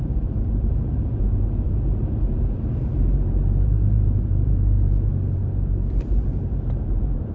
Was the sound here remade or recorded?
remade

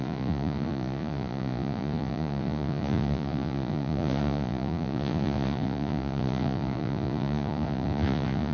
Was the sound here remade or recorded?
remade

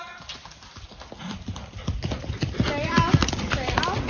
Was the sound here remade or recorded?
recorded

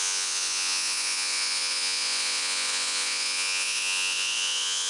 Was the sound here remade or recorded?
remade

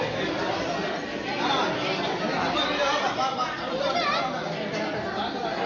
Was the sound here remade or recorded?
recorded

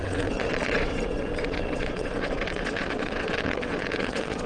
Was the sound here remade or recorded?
remade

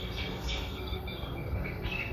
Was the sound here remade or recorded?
remade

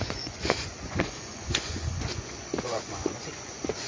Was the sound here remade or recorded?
remade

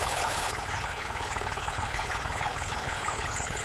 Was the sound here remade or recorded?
remade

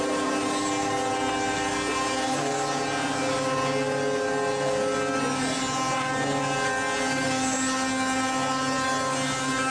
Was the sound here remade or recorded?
recorded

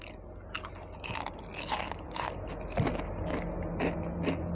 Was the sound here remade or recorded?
recorded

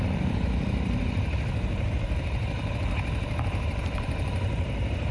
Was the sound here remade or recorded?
remade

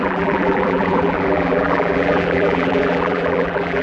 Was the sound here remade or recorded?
remade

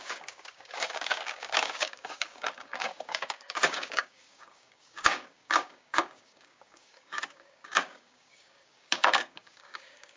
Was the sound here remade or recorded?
remade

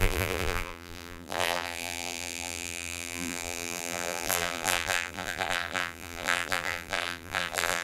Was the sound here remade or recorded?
remade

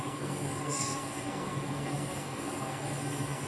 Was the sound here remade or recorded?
remade